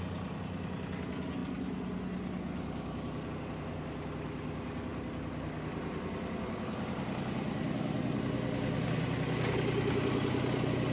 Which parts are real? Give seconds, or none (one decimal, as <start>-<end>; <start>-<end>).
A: 0.0-10.9